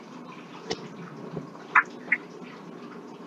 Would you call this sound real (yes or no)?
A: yes